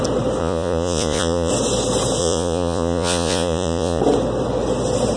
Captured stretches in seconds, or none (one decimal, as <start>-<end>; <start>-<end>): 0.0-0.4; 1.5-2.2; 4.0-5.2